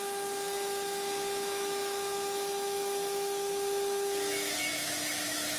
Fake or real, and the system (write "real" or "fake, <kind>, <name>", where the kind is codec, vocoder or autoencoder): fake, autoencoder, DAC-VAE